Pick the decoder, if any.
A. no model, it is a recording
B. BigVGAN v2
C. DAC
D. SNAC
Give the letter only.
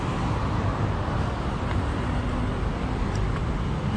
A